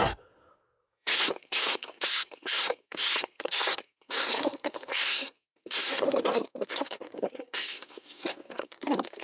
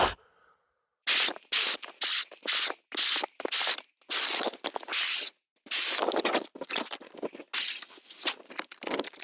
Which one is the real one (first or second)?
second